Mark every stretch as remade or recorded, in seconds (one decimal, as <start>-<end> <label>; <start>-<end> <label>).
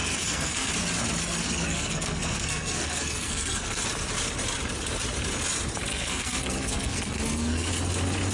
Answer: 0.0-0.7 remade; 0.7-1.2 recorded; 1.2-3.8 remade; 3.8-5.9 recorded; 5.9-7.7 remade; 7.7-8.3 recorded